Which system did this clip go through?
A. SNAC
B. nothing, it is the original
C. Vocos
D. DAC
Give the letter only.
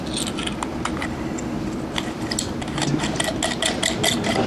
B